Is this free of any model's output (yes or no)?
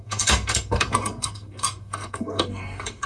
no